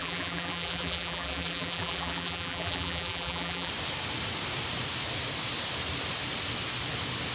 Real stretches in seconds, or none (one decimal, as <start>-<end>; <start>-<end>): 3.7-7.3